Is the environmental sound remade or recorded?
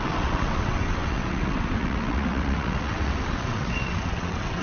remade